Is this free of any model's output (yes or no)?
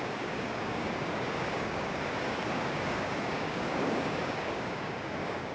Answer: no